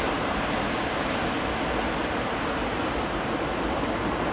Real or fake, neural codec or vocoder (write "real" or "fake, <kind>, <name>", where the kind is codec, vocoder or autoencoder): real